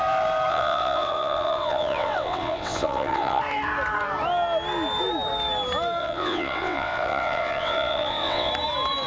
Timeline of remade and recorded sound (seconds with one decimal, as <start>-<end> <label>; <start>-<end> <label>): 0.0-0.5 recorded; 0.5-3.4 remade; 3.4-6.0 recorded; 6.0-8.5 remade; 8.5-9.1 recorded